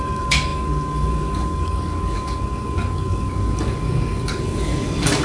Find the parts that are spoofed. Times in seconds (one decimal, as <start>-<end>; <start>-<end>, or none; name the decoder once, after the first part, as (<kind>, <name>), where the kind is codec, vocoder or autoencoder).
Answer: 0.0-5.2 (codec, DAC)